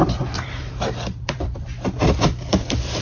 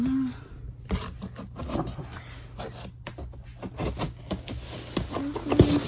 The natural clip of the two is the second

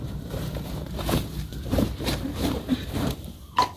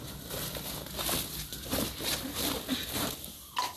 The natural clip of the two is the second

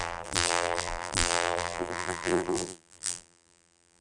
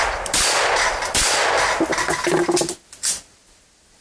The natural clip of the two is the second